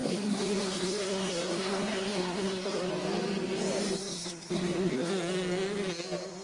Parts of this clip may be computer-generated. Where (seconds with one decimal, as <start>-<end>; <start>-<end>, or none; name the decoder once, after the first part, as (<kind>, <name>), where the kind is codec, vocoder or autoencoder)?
0.0-2.9 (codec, SNAC); 4.0-5.1